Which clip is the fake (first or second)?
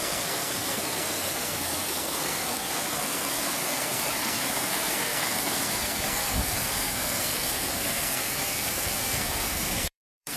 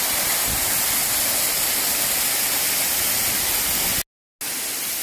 first